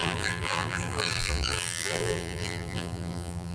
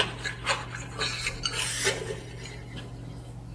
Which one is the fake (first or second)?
first